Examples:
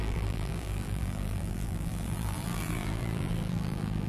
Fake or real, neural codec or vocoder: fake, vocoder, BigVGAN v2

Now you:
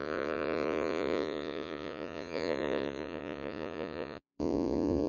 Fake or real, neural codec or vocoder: fake, vocoder, Vocos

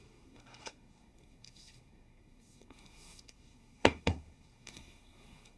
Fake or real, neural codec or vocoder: fake, codec, SNAC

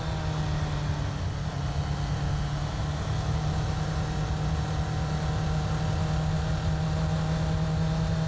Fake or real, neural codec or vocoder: real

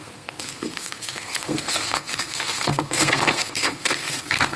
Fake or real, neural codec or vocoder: fake, codec, SNAC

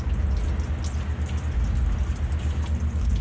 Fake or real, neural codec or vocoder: real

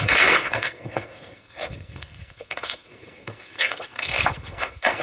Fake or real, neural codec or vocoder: fake, codec, SNAC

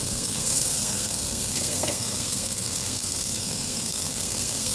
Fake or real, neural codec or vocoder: fake, codec, SNAC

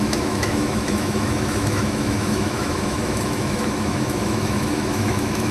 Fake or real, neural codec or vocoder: fake, autoencoder, DAC-VAE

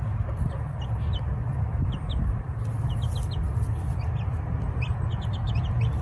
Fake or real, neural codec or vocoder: real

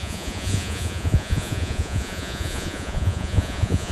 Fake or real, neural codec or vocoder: fake, vocoder, Vocos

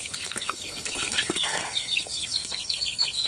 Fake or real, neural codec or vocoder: fake, codec, SNAC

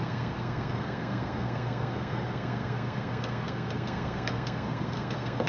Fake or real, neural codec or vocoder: fake, codec, SNAC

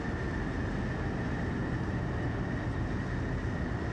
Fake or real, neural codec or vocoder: real